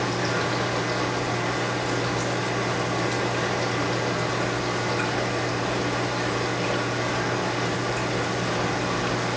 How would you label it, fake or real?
real